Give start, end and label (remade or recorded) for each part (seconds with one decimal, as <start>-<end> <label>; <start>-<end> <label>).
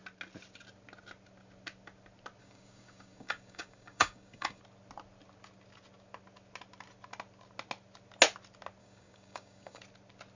0.0-2.4 recorded; 2.4-4.6 remade; 4.6-8.8 recorded; 8.8-9.8 remade; 9.8-10.4 recorded